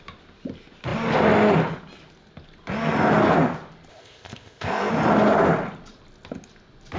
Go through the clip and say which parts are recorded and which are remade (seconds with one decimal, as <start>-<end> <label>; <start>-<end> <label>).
0.0-3.9 recorded; 3.9-4.9 remade; 4.9-7.0 recorded